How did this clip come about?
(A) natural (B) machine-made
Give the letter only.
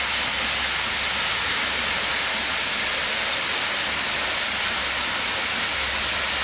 A